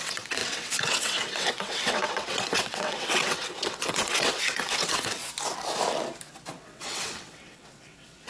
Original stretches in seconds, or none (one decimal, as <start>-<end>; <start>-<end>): 5.2-6.5